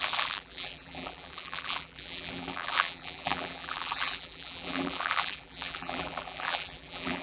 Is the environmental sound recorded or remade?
remade